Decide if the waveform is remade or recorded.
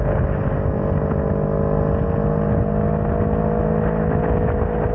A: recorded